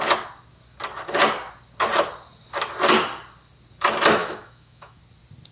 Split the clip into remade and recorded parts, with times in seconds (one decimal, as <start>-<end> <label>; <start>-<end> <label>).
0.0-4.2 recorded; 4.2-5.0 remade; 5.0-5.5 recorded